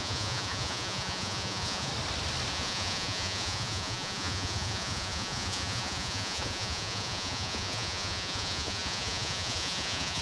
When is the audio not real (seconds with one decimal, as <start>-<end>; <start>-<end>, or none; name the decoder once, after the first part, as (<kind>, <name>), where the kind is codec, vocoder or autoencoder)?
0.0-1.9 (vocoder, Vocos); 2.5-10.2